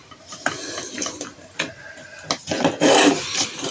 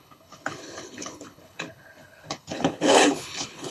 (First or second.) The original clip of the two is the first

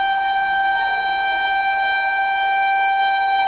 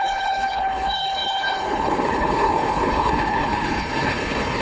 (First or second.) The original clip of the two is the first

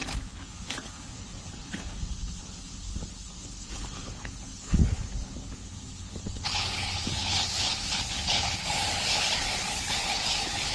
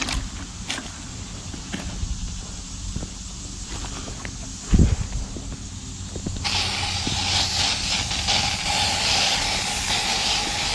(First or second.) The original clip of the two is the second